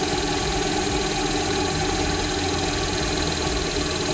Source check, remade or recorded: recorded